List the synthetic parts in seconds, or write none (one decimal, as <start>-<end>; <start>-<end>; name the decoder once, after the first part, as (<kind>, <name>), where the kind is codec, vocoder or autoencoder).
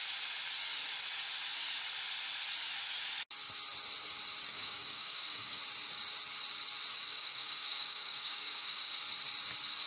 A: 4.5-5.6 (codec, DAC); 6.9-9.0